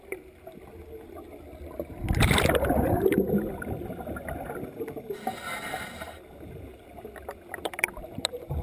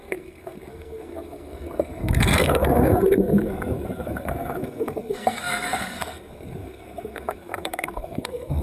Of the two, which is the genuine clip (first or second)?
first